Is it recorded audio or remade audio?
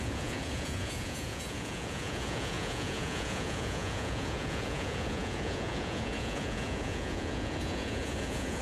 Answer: remade